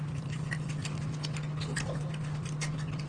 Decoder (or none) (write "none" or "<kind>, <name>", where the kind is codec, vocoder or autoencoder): none